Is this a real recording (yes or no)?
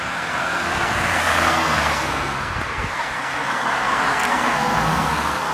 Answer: no